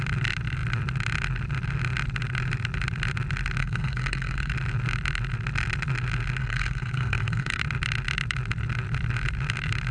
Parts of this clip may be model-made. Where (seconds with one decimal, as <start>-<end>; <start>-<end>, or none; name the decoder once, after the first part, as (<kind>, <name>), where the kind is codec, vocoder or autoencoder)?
3.6-4.5 (codec, SNAC); 6.4-7.6